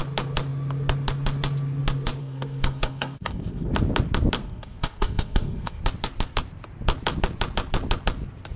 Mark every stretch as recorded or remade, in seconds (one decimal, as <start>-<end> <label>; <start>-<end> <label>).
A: 0.0-2.2 recorded; 2.2-3.7 remade; 3.7-4.4 recorded; 4.4-5.8 remade; 5.8-8.6 recorded